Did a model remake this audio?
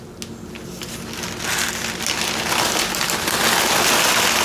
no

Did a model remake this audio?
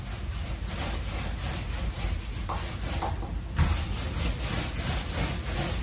no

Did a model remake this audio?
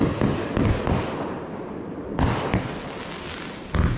no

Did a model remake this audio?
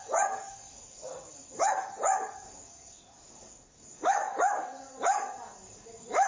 yes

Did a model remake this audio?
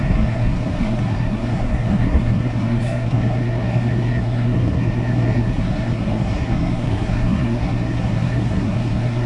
yes